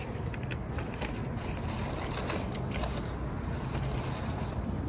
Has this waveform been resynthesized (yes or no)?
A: no